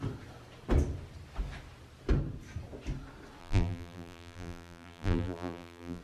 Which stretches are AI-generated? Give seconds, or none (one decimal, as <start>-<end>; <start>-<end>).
3.4-6.0